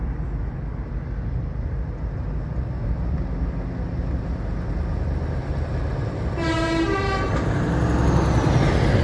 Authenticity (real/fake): real